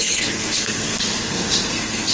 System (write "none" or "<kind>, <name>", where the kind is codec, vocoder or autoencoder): codec, SNAC